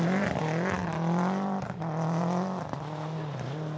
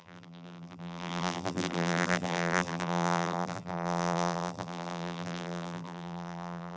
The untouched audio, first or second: first